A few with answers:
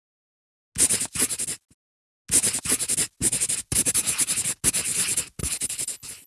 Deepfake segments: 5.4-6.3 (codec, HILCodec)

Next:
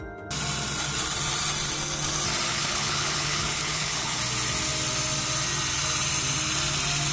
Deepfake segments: 2.5-4.2 (codec, HILCodec)